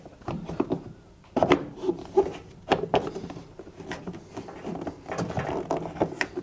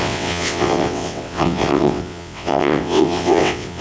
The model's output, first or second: second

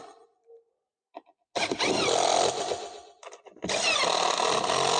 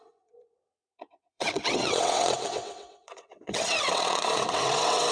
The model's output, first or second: second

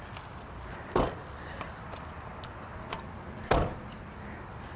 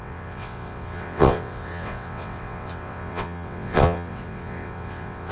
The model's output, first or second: second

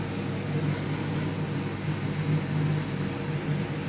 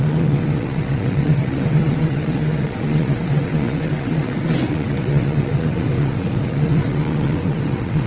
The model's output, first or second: second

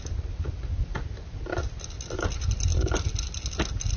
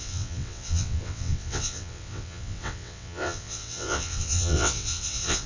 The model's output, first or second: second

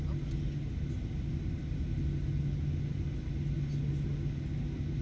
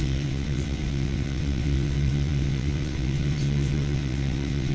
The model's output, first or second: second